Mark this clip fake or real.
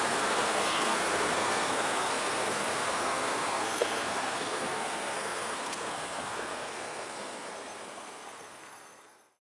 fake